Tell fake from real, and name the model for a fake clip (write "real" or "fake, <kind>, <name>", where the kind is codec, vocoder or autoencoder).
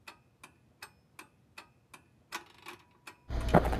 real